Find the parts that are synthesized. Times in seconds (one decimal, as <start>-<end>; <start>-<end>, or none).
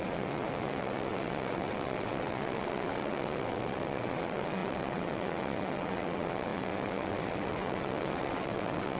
0.0-9.0